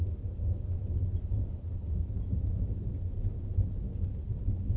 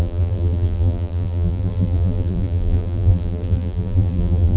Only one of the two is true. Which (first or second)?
first